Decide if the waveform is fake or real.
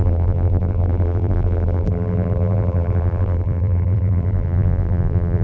fake